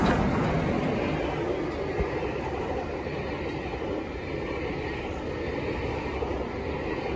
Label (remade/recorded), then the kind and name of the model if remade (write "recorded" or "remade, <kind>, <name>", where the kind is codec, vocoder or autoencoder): recorded